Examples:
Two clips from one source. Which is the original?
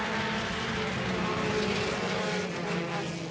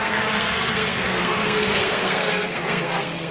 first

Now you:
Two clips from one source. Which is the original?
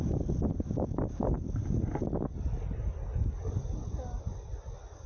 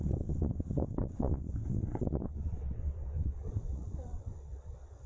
first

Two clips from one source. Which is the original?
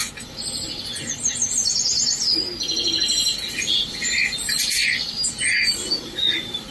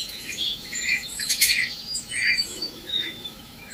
first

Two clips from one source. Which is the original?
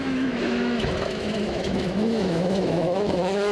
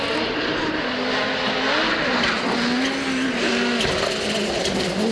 second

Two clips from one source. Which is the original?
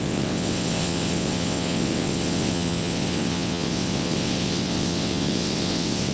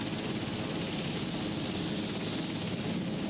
second